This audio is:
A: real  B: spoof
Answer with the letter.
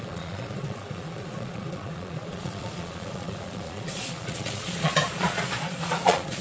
B